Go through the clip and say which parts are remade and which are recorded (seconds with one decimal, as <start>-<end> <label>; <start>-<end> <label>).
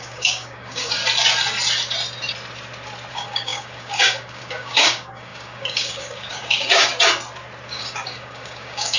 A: 0.0-1.0 remade; 1.0-3.1 recorded; 3.1-6.9 remade; 6.9-7.7 recorded; 7.7-9.0 remade